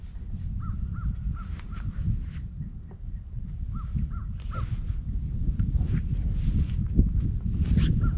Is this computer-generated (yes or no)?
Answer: no